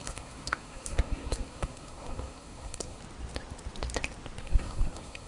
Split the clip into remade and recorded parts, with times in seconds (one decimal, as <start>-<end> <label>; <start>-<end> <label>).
0.0-3.0 remade; 3.0-4.4 recorded; 4.4-5.3 remade